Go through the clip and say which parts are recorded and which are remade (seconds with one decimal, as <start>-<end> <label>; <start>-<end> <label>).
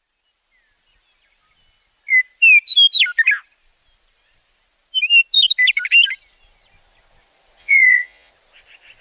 0.0-7.6 recorded; 7.6-8.3 remade; 8.3-9.0 recorded